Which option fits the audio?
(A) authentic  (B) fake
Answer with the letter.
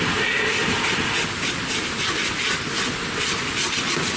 A